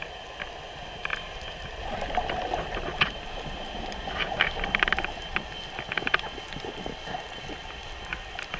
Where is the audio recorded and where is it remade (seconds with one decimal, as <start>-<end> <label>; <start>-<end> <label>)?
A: 0.0-1.1 recorded; 1.1-4.4 remade; 4.4-8.6 recorded